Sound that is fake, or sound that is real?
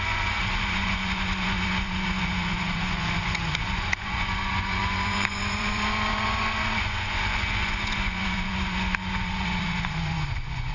fake